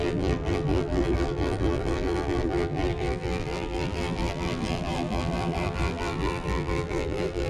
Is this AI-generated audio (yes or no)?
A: yes